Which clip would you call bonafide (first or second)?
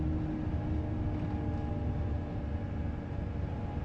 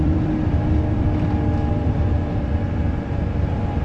first